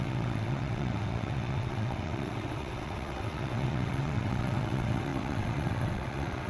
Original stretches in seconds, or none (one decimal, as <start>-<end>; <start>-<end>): none